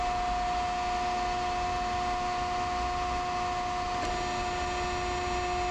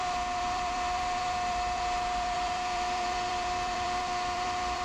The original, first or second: first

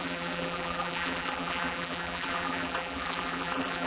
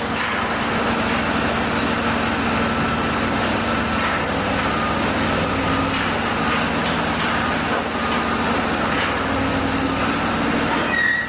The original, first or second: second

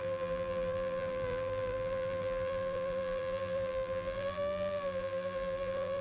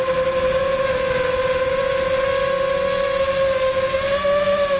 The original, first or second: second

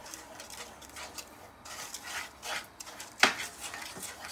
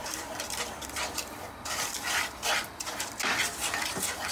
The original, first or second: first